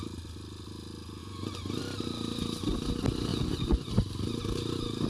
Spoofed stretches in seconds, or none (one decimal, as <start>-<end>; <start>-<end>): 1.2-1.8; 3.3-3.9

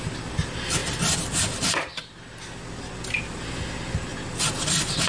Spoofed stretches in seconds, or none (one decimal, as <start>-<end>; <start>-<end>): none